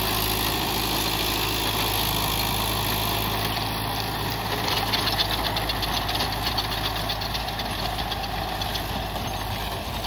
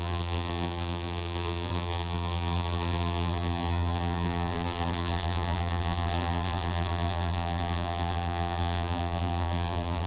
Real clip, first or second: first